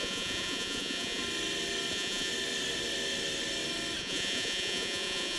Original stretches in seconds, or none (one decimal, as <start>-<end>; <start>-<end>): 1.2-1.9; 2.3-4.0